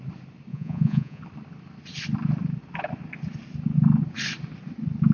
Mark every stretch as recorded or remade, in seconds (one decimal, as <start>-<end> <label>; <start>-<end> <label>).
0.0-0.5 recorded; 0.5-1.2 remade; 1.2-5.1 recorded